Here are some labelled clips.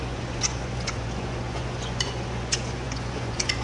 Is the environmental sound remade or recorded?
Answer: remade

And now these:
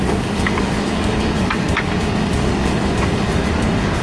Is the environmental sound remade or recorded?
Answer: remade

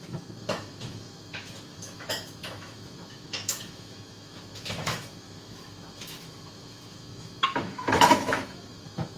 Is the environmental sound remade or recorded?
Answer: remade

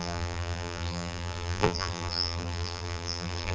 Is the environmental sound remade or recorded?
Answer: remade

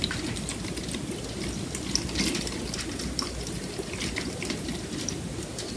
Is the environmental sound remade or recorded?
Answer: recorded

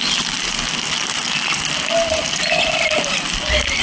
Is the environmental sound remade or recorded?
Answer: recorded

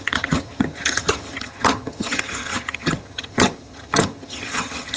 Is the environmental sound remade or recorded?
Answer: remade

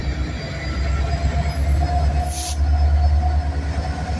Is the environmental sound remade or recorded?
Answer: recorded